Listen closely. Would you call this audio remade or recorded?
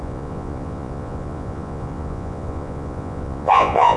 remade